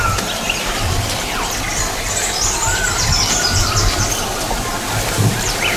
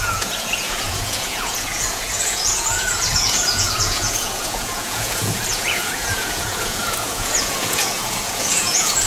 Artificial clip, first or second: second